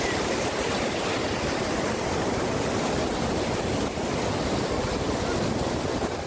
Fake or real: real